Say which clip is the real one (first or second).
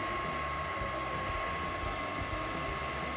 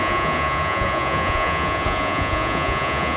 first